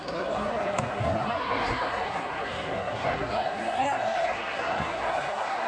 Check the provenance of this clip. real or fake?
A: fake